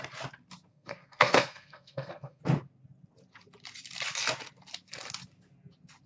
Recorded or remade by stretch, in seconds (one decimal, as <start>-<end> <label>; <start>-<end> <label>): 0.0-0.7 recorded; 0.7-2.4 remade; 2.4-6.1 recorded